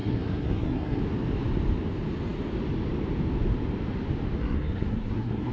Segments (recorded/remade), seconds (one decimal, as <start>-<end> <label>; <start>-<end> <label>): 0.0-1.0 remade; 1.0-4.4 recorded; 4.4-5.5 remade